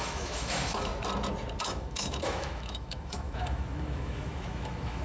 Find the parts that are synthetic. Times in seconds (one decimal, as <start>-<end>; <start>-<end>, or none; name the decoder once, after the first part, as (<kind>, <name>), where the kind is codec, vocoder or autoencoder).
0.0-0.9 (autoencoder, DAC-VAE); 1.6-5.0